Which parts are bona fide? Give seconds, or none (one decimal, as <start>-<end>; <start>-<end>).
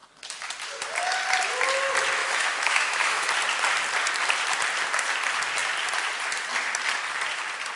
0.0-2.2; 3.3-7.8